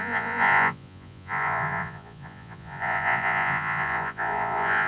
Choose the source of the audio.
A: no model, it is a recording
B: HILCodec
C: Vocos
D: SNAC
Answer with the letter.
C